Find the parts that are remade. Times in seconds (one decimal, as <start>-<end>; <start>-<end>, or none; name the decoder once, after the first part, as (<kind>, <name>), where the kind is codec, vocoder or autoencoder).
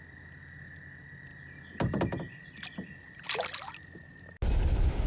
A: none